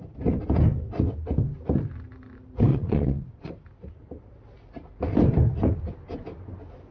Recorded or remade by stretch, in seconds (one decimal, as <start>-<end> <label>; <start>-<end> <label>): 0.0-2.7 recorded; 2.7-3.5 remade; 3.5-6.9 recorded

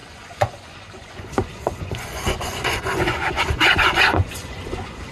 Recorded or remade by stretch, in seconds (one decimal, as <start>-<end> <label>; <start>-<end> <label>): 0.0-5.1 remade

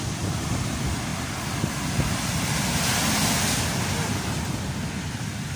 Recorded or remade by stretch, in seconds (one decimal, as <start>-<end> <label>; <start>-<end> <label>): 0.0-5.6 recorded

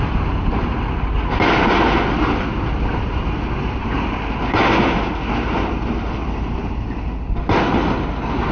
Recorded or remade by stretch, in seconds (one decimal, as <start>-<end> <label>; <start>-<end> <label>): 0.0-8.5 recorded